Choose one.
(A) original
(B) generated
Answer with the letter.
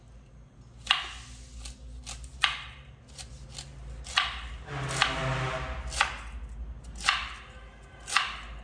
A